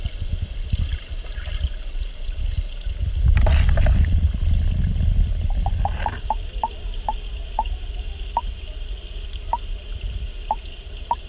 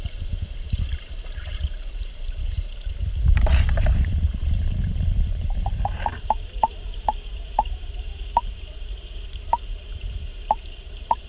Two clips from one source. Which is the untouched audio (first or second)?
first